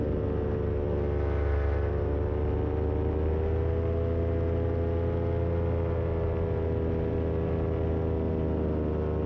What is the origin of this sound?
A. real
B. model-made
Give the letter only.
A